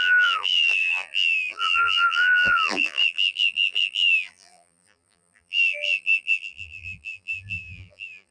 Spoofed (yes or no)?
yes